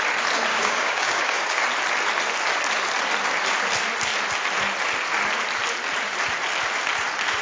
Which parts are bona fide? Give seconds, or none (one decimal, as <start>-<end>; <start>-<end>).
0.0-0.5; 1.6-7.4